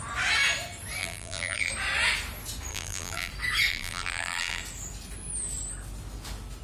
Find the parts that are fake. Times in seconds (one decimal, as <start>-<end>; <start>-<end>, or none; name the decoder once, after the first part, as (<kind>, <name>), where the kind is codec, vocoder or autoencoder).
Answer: 1.0-1.7 (vocoder, BigVGAN v2); 2.7-3.3; 3.7-4.6